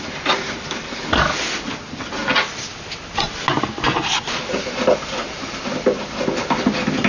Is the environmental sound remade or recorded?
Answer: recorded